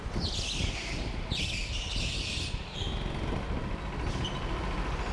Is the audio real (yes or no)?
yes